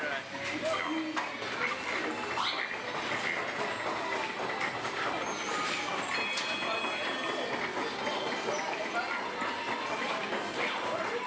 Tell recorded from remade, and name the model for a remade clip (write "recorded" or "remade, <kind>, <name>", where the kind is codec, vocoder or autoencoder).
recorded